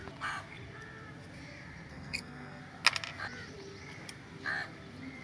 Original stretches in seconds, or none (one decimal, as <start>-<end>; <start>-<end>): 0.0-1.9; 2.6-5.2